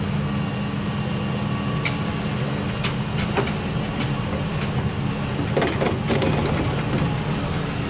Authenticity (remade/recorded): recorded